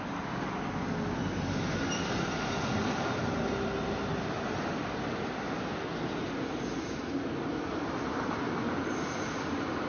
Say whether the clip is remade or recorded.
recorded